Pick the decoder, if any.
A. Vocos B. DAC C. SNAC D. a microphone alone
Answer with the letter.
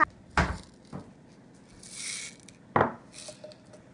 D